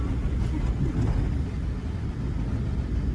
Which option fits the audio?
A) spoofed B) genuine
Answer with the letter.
B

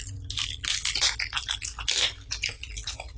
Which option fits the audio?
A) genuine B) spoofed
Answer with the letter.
A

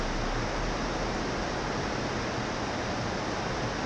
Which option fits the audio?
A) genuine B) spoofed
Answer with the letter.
A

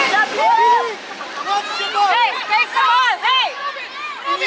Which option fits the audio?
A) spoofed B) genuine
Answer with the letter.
B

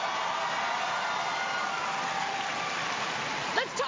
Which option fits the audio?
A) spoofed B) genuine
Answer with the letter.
B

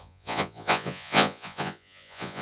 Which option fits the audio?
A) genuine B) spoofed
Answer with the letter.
B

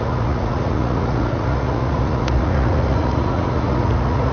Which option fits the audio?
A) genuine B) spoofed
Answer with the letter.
B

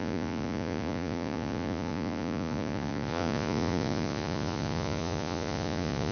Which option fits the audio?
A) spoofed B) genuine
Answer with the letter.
A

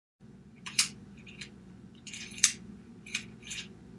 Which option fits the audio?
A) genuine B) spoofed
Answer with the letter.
B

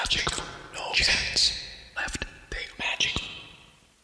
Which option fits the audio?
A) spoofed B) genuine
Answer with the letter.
B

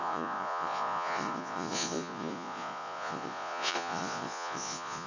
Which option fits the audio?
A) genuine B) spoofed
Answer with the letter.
B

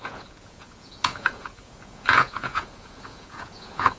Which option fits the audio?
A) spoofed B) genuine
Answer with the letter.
A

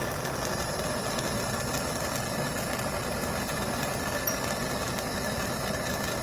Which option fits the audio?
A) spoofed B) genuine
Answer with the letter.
B